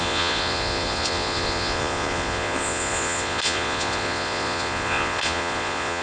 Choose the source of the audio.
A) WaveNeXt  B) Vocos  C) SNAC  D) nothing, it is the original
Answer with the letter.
B